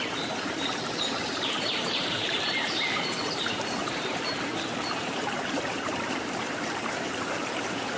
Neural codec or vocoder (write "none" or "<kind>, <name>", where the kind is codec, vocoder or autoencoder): vocoder, BigVGAN v2